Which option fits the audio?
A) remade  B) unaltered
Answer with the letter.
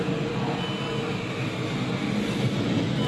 B